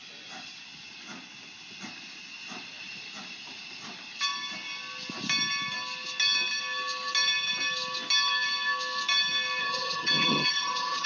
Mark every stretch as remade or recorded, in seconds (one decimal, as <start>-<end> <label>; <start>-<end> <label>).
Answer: 0.0-9.6 recorded; 9.6-11.1 remade